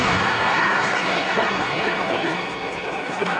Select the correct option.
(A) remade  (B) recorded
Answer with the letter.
A